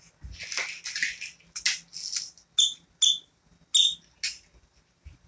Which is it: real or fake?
real